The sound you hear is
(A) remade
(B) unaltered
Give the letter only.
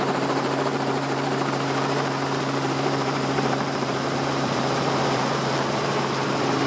A